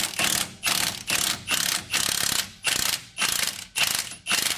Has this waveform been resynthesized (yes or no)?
no